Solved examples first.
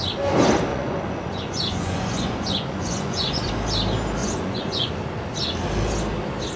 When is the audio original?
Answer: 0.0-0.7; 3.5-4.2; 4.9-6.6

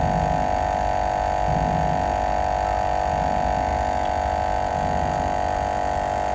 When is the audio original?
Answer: 0.0-6.3

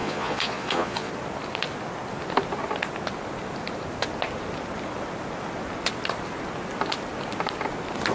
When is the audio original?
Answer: 1.1-8.1

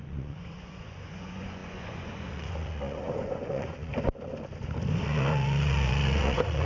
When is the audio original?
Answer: 3.9-5.0

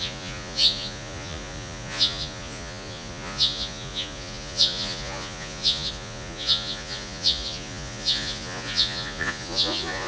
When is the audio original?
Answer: none

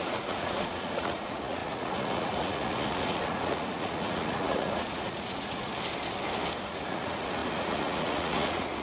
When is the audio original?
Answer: 5.7-6.7